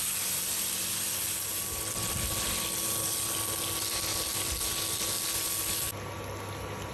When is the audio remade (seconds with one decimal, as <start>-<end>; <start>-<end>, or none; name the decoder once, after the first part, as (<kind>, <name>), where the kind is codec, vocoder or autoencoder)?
none